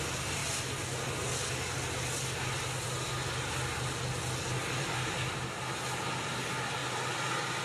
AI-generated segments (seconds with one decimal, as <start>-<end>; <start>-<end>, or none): 4.6-5.3